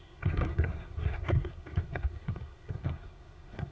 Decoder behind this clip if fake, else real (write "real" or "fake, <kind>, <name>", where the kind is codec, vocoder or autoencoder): fake, codec, SNAC